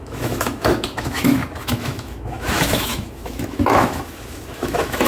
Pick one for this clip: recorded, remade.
remade